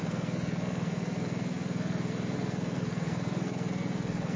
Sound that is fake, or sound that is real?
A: fake